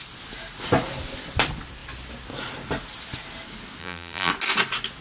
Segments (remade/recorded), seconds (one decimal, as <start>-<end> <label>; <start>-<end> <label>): 0.0-3.8 recorded; 3.8-4.3 remade; 4.3-5.0 recorded